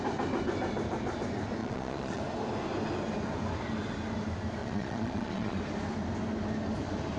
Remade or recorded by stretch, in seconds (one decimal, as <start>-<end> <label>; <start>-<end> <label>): 0.0-1.6 recorded; 1.6-2.2 remade; 2.2-4.6 recorded; 4.6-5.6 remade; 5.6-7.2 recorded

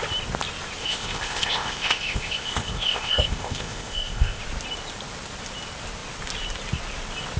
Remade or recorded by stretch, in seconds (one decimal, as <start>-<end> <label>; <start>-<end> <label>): 0.0-0.8 recorded; 0.8-4.4 remade; 4.4-7.4 recorded

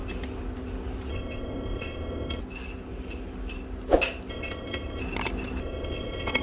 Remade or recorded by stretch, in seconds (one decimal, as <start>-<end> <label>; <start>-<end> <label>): 0.0-1.1 recorded; 1.1-2.4 remade; 2.4-4.3 recorded; 4.3-5.0 remade; 5.0-5.6 recorded; 5.6-6.4 remade

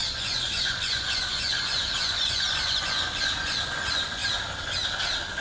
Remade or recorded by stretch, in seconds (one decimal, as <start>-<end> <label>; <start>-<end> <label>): 0.0-4.2 remade; 4.2-5.4 recorded

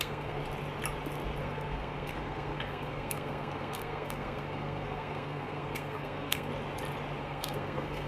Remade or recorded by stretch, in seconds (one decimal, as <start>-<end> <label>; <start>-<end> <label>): 0.0-0.4 remade; 0.4-1.4 recorded; 1.4-6.5 remade; 6.5-7.2 recorded; 7.2-8.1 remade

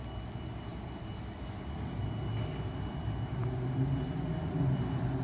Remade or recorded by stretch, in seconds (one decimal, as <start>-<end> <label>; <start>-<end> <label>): 0.0-5.2 recorded

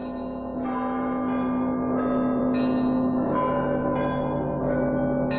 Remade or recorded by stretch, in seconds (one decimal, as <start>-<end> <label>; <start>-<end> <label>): 0.0-5.4 recorded